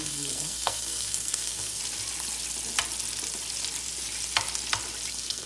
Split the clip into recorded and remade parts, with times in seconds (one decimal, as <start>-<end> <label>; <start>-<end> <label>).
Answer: 0.0-1.8 remade; 1.8-5.1 recorded; 5.1-5.5 remade